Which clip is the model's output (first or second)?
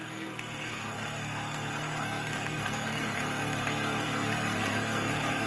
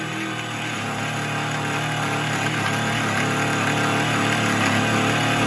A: first